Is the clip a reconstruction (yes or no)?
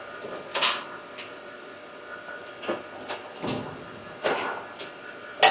no